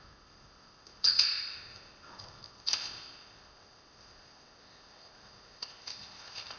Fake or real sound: fake